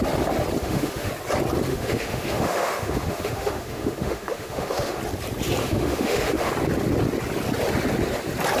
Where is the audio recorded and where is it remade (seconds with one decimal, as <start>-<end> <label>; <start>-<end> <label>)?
0.0-0.6 recorded; 0.6-1.1 remade; 1.1-1.7 recorded; 1.7-5.0 remade; 5.0-5.6 recorded; 5.6-6.5 remade; 6.5-8.6 recorded

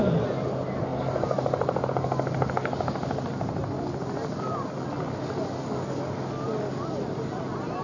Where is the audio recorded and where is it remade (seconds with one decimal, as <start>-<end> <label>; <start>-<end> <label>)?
0.0-7.8 recorded

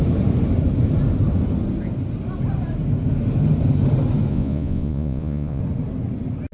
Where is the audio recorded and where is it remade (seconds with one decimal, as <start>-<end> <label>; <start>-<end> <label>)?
0.0-4.3 recorded; 4.3-5.6 remade; 5.6-6.5 recorded